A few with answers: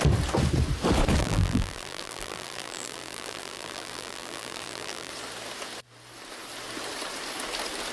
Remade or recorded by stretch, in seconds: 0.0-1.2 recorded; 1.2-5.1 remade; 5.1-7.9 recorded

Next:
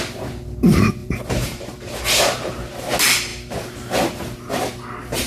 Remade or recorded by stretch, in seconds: 0.0-1.0 recorded; 1.0-2.6 remade; 2.6-5.3 recorded

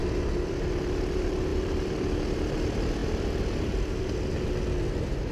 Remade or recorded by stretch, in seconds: 0.0-1.5 recorded; 1.5-2.6 remade; 2.6-5.3 recorded

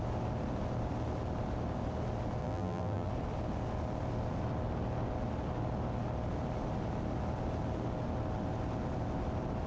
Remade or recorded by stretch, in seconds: 0.0-2.4 recorded; 2.4-3.1 remade; 3.1-9.7 recorded

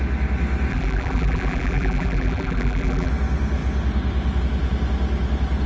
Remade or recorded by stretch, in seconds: 0.0-0.7 recorded; 0.7-3.1 remade; 3.1-5.7 recorded

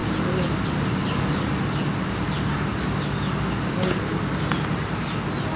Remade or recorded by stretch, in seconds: 0.0-1.5 remade; 1.5-5.6 recorded